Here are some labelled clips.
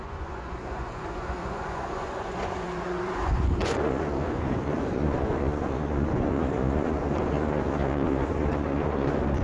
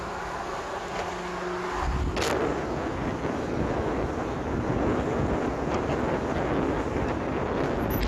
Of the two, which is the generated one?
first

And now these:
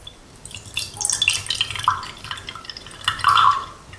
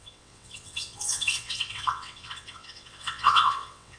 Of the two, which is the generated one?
second